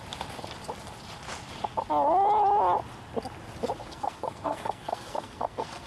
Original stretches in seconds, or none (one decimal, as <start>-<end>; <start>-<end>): 0.0-3.8